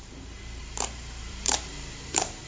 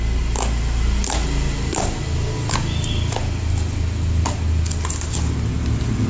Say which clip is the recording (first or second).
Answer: second